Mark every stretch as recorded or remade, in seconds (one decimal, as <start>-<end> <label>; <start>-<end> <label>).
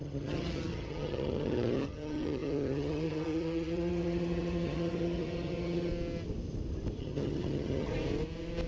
0.0-5.9 remade; 5.9-7.0 recorded; 7.0-7.9 remade; 7.9-8.7 recorded